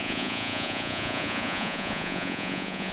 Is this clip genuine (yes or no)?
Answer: no